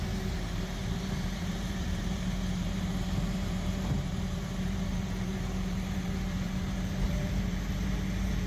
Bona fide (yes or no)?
no